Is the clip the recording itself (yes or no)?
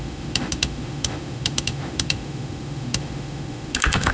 no